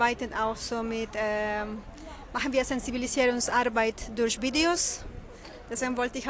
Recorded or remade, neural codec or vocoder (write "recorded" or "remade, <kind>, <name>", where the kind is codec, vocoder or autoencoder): recorded